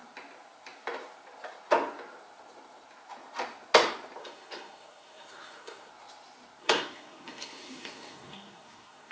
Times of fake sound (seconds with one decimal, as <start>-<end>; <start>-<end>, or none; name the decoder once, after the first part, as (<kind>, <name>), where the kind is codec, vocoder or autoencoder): 4.2-5.9 (codec, SNAC); 6.6-9.1